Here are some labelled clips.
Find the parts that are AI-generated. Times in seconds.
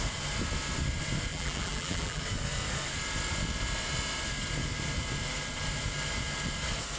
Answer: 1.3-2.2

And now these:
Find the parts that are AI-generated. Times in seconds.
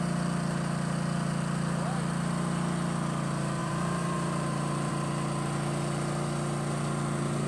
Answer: 3.6-4.9